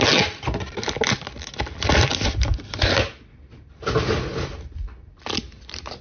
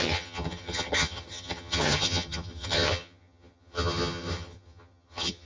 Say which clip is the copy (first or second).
second